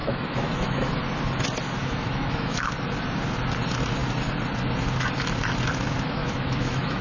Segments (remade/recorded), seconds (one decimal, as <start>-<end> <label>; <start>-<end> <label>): 0.0-0.9 remade; 0.9-1.8 recorded; 1.8-2.7 remade; 2.7-6.2 recorded; 6.2-7.0 remade